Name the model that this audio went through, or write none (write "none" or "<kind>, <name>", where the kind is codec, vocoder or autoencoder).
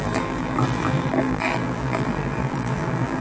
vocoder, BigVGAN v2